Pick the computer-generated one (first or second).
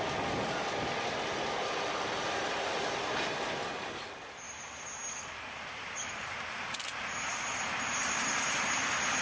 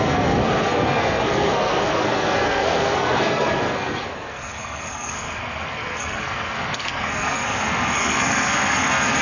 second